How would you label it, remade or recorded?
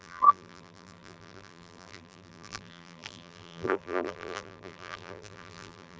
remade